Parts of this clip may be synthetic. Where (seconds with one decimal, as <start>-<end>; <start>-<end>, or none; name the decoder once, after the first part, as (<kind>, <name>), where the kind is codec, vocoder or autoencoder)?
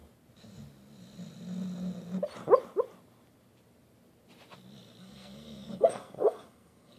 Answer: 5.0-7.0 (codec, SNAC)